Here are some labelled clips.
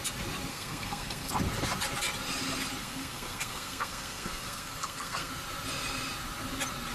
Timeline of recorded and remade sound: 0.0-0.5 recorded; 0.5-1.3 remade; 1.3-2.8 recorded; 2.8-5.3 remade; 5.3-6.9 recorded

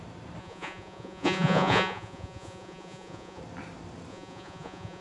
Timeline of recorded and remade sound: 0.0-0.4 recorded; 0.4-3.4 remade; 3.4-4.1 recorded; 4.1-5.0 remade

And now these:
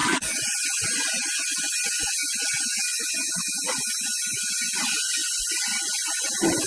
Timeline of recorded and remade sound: 0.0-6.7 recorded

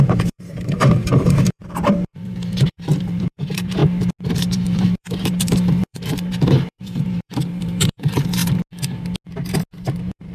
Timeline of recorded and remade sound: 0.0-3.8 remade; 3.8-4.3 recorded; 4.3-8.4 remade; 8.4-9.9 recorded; 9.9-10.3 remade